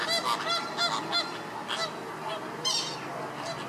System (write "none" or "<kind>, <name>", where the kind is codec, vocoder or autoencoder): none